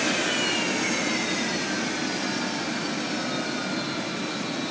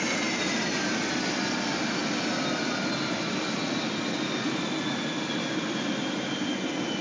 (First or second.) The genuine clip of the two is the first